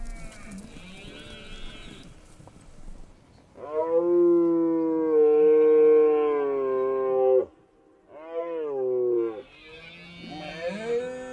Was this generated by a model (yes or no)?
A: no